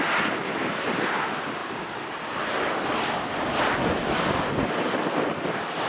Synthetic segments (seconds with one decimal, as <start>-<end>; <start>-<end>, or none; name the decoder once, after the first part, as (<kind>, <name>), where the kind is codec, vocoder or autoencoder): none